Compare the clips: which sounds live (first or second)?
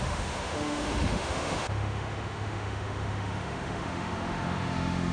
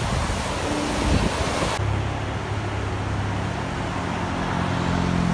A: second